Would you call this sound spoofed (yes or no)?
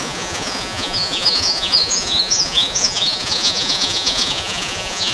yes